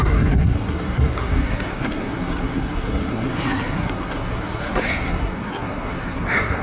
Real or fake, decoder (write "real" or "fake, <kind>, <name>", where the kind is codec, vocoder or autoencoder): fake, codec, SNAC